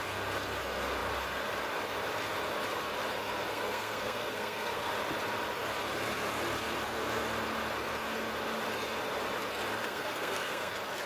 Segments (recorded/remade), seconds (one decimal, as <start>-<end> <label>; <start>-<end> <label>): 0.0-3.5 recorded; 3.5-4.9 remade; 4.9-9.8 recorded; 9.8-10.7 remade; 10.7-11.1 recorded